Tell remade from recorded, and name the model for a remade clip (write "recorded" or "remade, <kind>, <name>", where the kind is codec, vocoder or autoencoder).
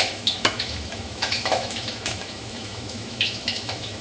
remade, autoencoder, DAC-VAE